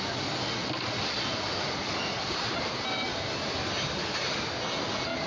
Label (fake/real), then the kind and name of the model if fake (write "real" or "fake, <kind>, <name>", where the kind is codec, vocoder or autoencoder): real